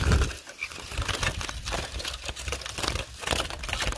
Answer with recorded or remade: recorded